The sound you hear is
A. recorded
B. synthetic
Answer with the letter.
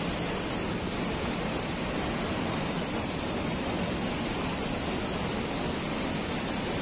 A